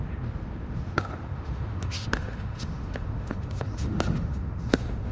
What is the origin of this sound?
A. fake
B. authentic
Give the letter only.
A